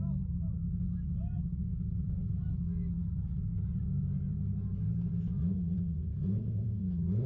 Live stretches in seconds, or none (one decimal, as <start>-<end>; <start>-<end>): 0.0-1.7; 2.3-3.5; 6.8-7.3